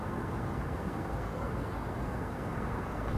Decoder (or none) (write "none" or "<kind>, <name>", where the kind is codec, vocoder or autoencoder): codec, SNAC